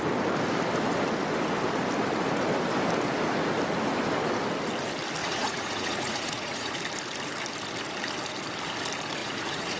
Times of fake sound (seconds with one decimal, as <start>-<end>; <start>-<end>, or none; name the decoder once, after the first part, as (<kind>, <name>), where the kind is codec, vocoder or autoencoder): 5.2-6.7 (vocoder, Vocos); 9.2-9.8

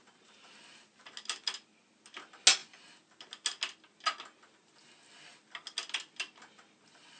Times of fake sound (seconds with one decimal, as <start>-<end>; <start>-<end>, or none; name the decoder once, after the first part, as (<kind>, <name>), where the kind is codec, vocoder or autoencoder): none

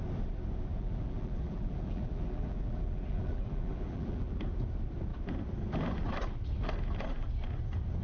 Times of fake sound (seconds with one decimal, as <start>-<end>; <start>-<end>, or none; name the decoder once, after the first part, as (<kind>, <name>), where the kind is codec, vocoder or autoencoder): 0.7-4.4 (vocoder, BigVGAN v2)

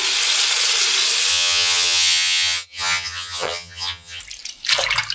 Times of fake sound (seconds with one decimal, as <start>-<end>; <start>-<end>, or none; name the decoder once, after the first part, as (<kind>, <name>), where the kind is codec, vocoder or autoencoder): 1.3-4.2 (vocoder, HiFi-GAN)

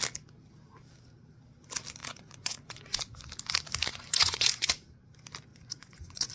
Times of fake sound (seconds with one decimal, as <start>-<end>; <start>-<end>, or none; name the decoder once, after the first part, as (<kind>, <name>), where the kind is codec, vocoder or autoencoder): 2.0-3.0 (vocoder, Vocos); 3.9-4.7; 5.5-6.3

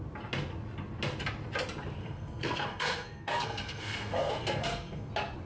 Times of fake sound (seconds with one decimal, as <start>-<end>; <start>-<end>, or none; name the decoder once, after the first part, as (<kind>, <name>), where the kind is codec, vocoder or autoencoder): 2.0-5.1 (codec, SNAC)